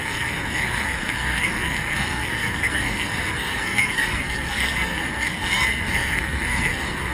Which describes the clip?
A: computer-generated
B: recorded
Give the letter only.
A